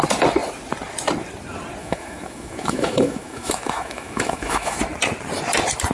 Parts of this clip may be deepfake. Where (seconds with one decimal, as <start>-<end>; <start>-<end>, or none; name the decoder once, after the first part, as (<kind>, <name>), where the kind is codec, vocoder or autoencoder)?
1.8-4.8 (autoencoder, DAC-VAE)